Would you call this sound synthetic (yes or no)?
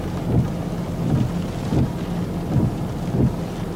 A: no